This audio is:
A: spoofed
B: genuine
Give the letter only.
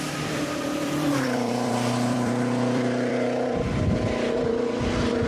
A